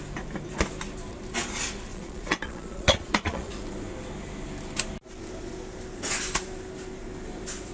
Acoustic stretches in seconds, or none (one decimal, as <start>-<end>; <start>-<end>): 0.0-1.9; 3.5-7.7